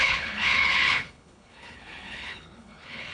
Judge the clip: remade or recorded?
remade